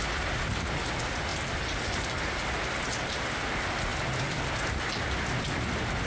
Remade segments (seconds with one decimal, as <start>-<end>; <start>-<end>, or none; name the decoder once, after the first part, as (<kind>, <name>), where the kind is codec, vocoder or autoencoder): 3.9-4.5 (vocoder, BigVGAN v2)